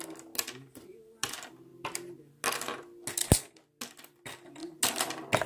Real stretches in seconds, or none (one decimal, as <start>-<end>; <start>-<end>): 0.0-5.5